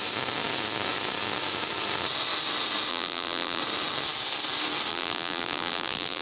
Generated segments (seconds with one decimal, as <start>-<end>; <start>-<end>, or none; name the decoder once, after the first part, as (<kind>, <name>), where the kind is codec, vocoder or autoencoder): 2.9-3.6 (vocoder, BigVGAN v2); 4.9-6.2